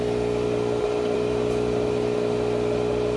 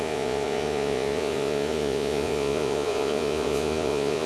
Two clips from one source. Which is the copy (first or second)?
second